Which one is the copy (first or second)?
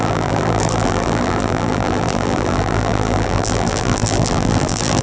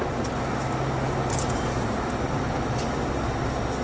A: first